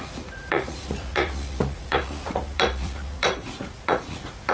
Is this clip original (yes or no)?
no